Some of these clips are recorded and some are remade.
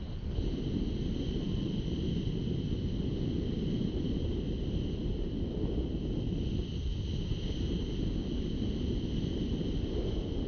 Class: recorded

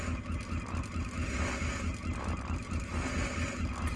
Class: recorded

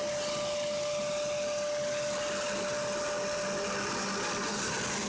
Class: recorded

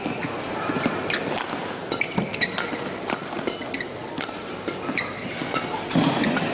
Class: recorded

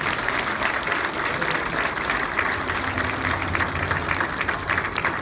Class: recorded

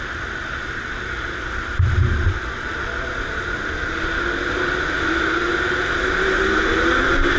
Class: recorded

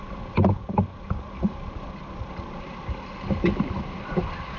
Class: recorded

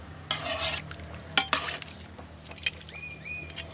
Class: recorded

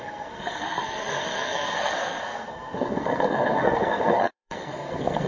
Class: remade